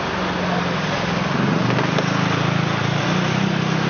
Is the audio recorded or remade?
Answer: recorded